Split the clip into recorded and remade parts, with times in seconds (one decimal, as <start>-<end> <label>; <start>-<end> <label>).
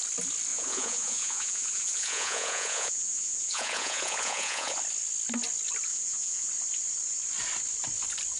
0.0-0.5 recorded; 0.5-4.8 remade; 4.8-5.9 recorded; 5.9-6.5 remade; 6.5-8.4 recorded